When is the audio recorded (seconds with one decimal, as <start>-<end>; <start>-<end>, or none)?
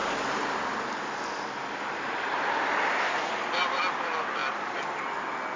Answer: 0.0-5.6